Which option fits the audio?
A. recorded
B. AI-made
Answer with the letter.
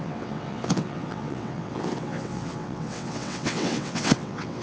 B